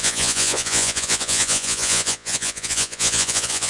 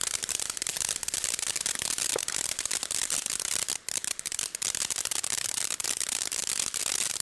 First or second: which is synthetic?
first